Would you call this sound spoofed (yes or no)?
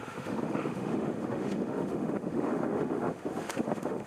yes